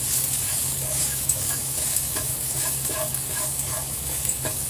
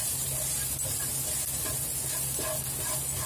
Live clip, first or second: second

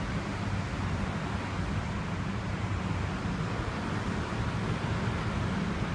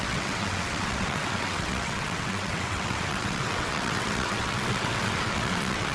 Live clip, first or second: first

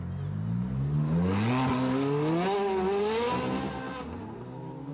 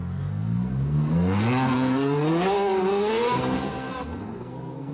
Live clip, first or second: first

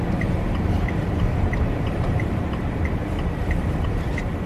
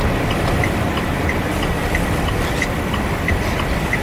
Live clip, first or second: second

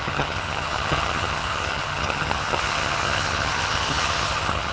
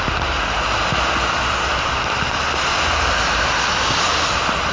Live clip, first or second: second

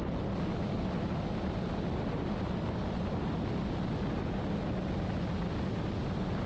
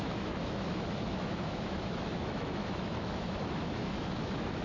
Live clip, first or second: first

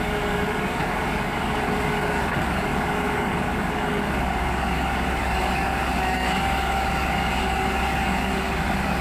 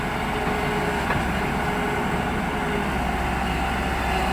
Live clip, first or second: second